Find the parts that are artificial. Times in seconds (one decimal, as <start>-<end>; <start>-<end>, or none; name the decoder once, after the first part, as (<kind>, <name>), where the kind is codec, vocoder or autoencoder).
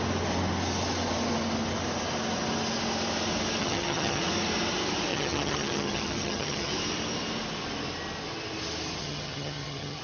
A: 3.6-4.2 (vocoder, HiFi-GAN); 5.1-6.7; 9.0-10.0